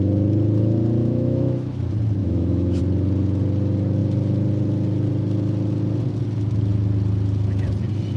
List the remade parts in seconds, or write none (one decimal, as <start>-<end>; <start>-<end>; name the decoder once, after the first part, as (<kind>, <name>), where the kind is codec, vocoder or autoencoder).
1.0-1.8 (autoencoder, DAC-VAE); 2.2-2.8